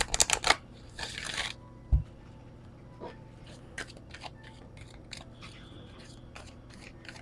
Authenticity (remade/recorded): recorded